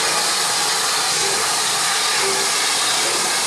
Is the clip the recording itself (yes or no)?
yes